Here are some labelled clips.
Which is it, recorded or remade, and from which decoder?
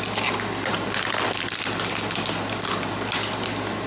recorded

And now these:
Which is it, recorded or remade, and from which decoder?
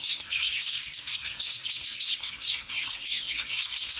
remade, codec, SNAC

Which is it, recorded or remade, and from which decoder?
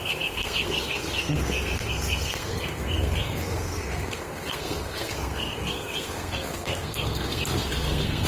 remade, codec, SNAC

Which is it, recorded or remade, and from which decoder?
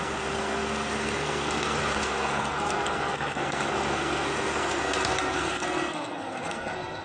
remade, codec, SNAC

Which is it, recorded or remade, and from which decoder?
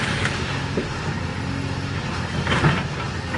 recorded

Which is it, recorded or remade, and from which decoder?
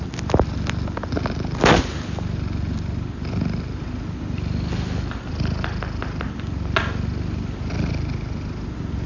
recorded